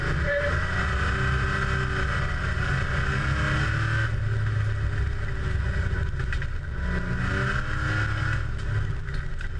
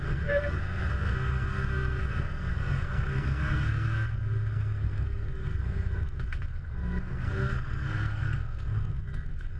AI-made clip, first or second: second